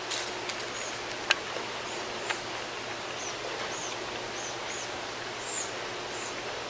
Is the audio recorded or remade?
recorded